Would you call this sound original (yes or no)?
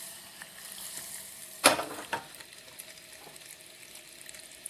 no